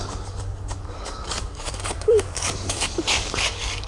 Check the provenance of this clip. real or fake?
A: fake